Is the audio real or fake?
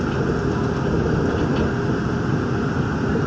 real